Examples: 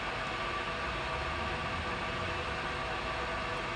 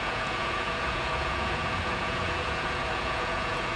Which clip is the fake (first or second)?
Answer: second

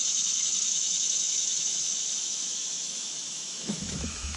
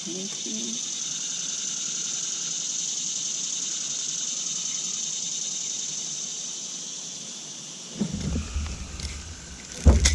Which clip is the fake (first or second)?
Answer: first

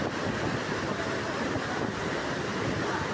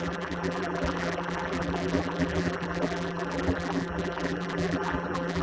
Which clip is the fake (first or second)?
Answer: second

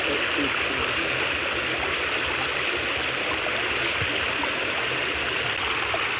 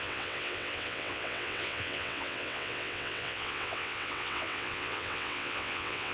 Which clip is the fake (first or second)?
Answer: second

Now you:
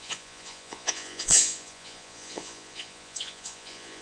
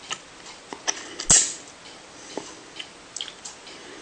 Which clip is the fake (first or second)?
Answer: first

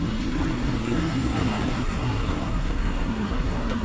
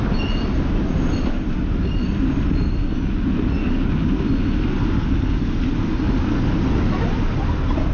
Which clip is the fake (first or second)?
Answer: first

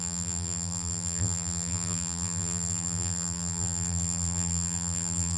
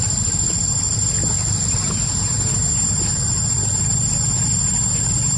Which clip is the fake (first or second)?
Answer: first